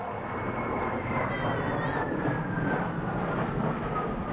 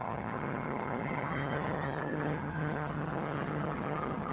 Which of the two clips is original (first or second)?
first